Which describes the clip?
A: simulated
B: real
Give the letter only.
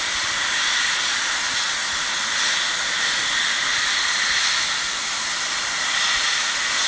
B